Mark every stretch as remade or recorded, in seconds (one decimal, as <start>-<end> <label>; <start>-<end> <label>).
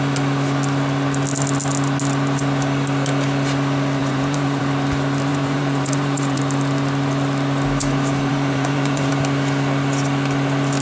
0.0-4.0 recorded; 4.0-4.6 remade; 4.6-5.3 recorded; 5.3-6.4 remade; 6.4-8.3 recorded; 8.3-9.1 remade; 9.1-10.8 recorded